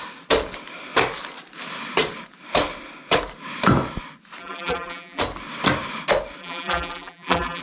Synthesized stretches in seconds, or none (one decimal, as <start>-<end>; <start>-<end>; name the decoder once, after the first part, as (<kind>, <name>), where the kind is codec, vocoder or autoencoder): 4.4-5.2 (vocoder, BigVGAN v2); 6.4-7.6